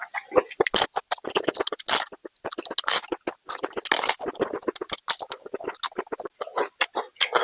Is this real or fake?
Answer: real